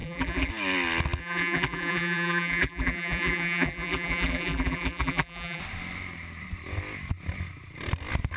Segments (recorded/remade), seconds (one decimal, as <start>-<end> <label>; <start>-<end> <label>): 0.0-0.5 remade; 0.5-1.2 recorded; 1.2-5.6 remade; 5.6-8.4 recorded